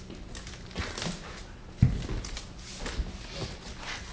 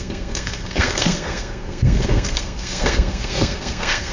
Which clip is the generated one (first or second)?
second